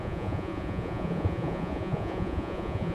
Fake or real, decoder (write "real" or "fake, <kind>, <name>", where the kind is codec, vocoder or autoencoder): fake, vocoder, Vocos